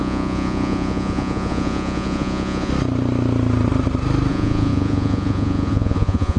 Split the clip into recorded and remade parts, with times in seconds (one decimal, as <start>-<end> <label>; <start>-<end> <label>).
0.0-2.7 remade; 2.7-4.3 recorded; 4.3-6.4 remade